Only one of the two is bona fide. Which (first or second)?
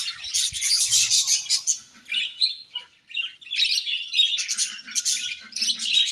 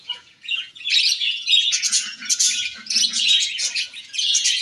first